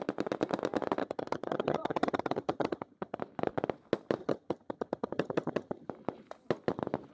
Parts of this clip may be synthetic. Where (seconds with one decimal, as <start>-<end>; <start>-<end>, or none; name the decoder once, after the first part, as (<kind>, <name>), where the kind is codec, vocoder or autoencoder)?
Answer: 1.0-3.2 (vocoder, HiFi-GAN); 4.2-5.9